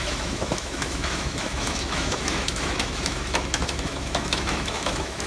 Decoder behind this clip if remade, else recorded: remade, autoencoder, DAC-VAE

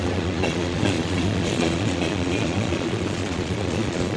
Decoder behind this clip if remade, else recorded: remade, vocoder, Vocos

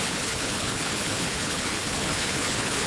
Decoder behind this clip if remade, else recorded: remade, codec, HILCodec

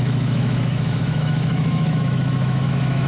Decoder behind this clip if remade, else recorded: remade, autoencoder, DAC-VAE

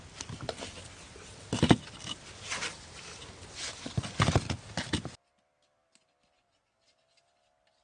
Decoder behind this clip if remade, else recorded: recorded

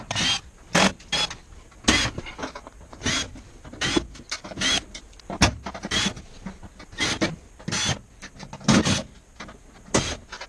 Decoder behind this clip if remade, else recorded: recorded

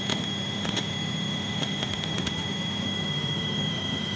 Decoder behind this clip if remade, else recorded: remade, autoencoder, DAC-VAE